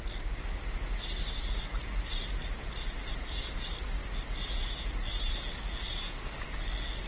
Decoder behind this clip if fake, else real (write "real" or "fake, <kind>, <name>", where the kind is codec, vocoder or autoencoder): real